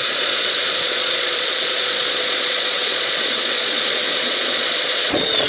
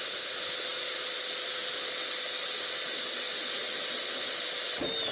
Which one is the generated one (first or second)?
first